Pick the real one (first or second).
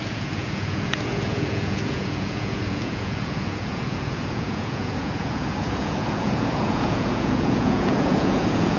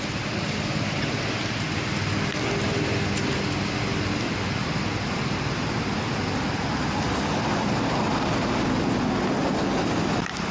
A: second